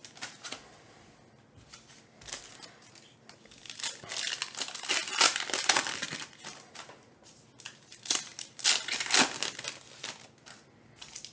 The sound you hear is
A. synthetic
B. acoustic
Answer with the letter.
B